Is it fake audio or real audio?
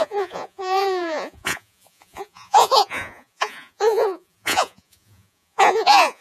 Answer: fake